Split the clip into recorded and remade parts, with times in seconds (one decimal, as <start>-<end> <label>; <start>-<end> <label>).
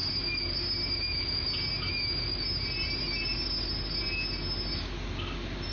0.0-5.7 recorded